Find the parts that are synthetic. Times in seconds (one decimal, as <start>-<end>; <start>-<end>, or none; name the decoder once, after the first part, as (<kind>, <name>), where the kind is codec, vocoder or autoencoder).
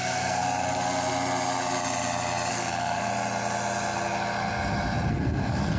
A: 0.0-0.4 (codec, SNAC); 2.5-3.1; 5.1-5.8